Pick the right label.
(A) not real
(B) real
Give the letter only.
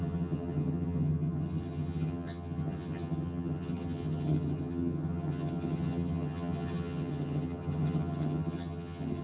A